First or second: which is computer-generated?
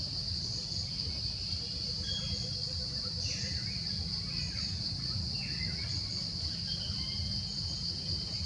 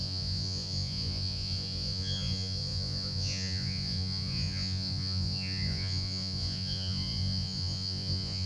second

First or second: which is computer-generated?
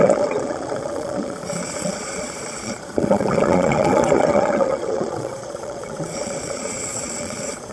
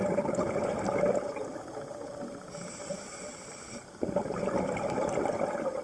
first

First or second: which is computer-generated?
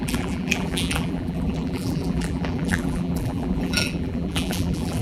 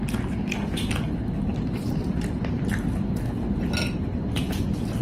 first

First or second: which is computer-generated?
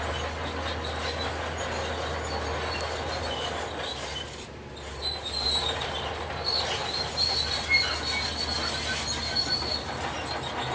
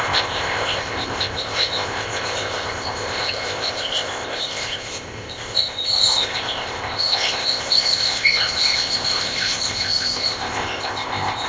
second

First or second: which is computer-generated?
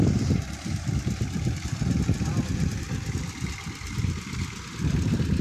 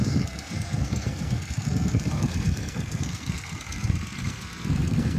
second